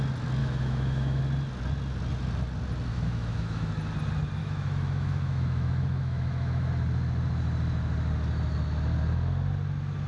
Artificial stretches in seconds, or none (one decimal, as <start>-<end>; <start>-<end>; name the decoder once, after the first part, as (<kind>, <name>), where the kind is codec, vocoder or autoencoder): 0.4-1.2 (autoencoder, DAC-VAE); 2.9-3.7; 4.4-6.7